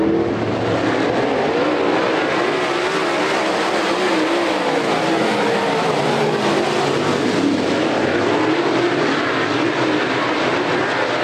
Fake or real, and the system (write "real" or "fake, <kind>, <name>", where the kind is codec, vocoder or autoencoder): real